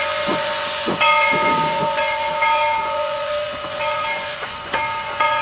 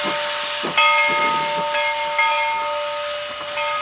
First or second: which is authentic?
second